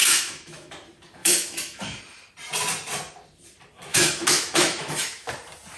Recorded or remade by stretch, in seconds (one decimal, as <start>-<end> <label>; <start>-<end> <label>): 0.0-0.7 remade; 0.7-1.2 recorded; 1.2-2.0 remade; 2.0-3.9 recorded; 3.9-5.3 remade; 5.3-5.8 recorded